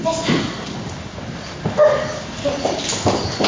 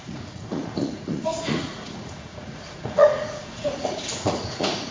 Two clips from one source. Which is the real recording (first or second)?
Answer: first